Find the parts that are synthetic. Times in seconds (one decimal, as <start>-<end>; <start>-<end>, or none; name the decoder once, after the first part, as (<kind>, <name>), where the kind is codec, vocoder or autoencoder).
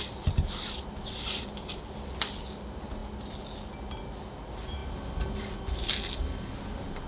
none